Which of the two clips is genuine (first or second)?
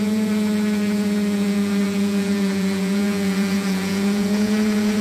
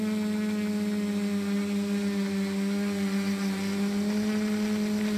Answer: second